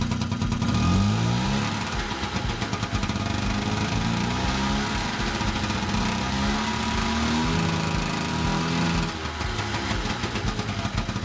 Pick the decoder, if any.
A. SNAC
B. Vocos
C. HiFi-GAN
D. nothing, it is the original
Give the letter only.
D